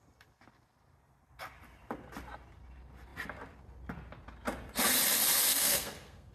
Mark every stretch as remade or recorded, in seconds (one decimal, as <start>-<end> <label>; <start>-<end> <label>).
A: 0.0-5.5 recorded; 5.5-6.3 remade